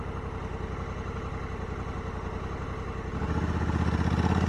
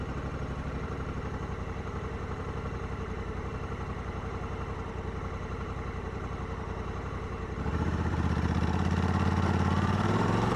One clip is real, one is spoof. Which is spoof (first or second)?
second